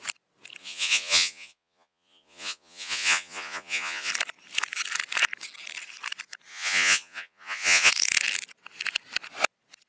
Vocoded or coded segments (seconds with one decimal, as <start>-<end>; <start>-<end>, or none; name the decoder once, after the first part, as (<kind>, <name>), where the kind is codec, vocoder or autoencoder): 0.6-4.1 (vocoder, Vocos); 6.5-7.9